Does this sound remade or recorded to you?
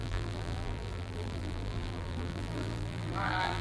remade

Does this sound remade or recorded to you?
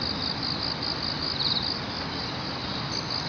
recorded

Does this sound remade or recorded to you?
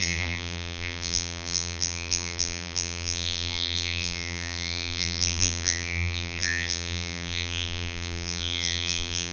remade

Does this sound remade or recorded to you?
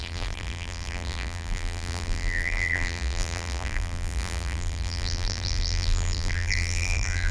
remade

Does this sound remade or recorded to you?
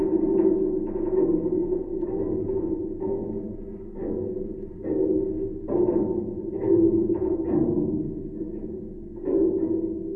recorded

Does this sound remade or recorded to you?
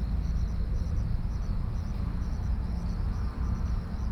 recorded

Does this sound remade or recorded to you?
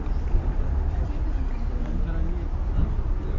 remade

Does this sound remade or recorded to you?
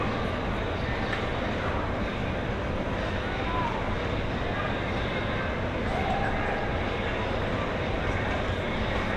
recorded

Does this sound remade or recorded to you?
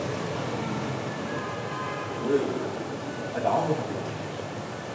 remade